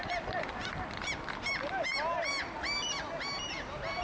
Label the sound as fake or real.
real